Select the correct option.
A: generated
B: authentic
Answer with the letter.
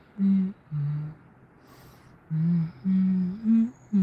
B